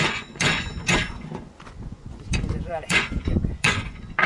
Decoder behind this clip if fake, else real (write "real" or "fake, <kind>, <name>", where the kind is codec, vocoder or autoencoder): fake, vocoder, Vocos